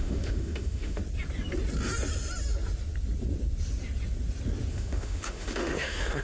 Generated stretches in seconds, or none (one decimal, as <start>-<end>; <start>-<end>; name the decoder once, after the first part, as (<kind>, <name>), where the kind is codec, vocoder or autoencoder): 0.0-1.0 (autoencoder, DAC-VAE); 4.7-6.2